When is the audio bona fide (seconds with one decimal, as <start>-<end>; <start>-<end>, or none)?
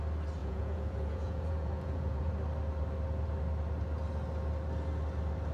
0.0-0.4; 2.3-5.5